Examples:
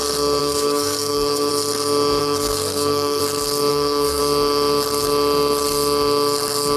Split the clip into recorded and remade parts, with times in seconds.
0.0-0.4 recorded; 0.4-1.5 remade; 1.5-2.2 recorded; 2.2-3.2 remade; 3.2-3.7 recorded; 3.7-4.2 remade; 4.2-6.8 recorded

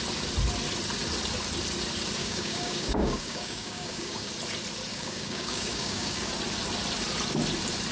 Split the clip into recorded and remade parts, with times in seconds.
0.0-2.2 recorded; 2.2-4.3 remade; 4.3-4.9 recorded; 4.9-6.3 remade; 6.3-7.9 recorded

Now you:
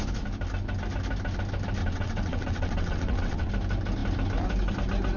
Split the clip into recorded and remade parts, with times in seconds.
0.0-1.8 recorded; 1.8-3.5 remade; 3.5-5.2 recorded

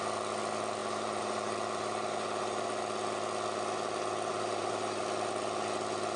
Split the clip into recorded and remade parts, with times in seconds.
0.0-0.8 recorded; 0.8-2.8 remade; 2.8-4.3 recorded; 4.3-5.0 remade; 5.0-6.2 recorded

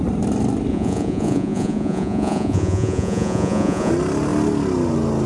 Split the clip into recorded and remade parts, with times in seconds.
0.0-0.7 recorded; 0.7-3.9 remade; 3.9-5.3 recorded

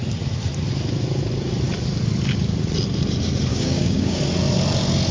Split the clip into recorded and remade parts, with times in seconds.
0.0-3.5 recorded; 3.5-4.2 remade; 4.2-5.1 recorded